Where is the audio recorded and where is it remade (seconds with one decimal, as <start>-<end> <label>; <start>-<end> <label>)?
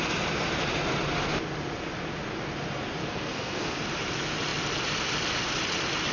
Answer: 0.0-3.0 recorded; 3.0-3.8 remade; 3.8-6.1 recorded